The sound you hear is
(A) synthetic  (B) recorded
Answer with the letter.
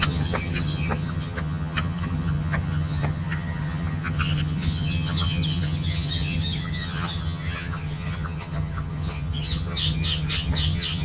A